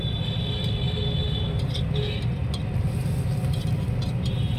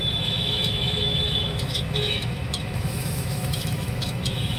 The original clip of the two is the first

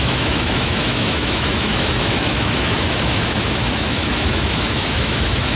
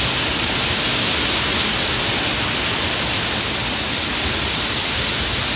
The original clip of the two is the second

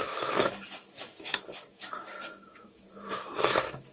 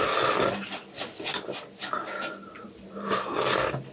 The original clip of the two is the second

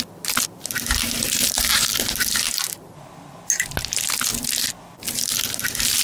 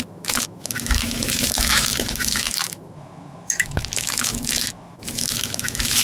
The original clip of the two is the first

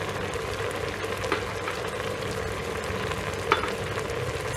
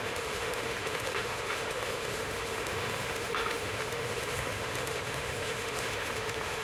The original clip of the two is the first